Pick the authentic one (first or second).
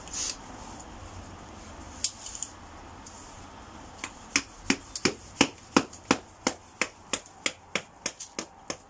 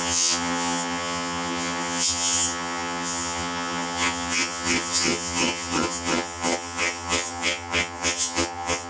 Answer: first